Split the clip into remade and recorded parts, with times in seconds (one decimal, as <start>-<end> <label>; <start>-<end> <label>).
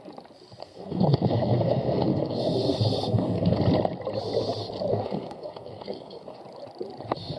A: 0.0-0.6 recorded; 0.6-3.6 remade; 3.6-4.9 recorded; 4.9-6.4 remade; 6.4-7.4 recorded